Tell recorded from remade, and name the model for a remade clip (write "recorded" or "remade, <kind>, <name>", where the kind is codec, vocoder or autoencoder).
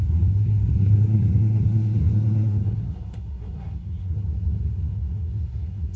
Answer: remade, codec, SNAC